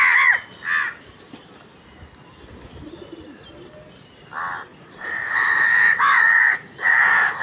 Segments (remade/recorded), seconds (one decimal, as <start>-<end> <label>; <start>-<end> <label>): 0.0-4.7 recorded; 4.7-7.4 remade